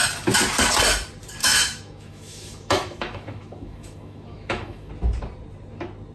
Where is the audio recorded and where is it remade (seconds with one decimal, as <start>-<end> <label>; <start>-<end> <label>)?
0.0-1.4 recorded; 1.4-4.9 remade; 4.9-6.1 recorded